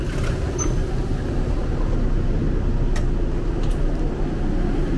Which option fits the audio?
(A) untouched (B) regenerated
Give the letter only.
A